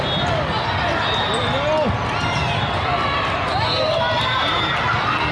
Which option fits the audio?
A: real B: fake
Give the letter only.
A